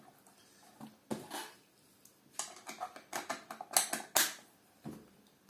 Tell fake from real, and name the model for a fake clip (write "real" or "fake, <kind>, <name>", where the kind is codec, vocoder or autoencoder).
real